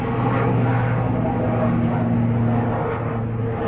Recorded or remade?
recorded